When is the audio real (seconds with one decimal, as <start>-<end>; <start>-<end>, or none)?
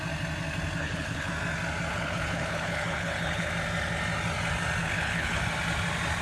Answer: 0.0-0.8; 1.3-1.9; 3.5-4.8; 5.4-6.2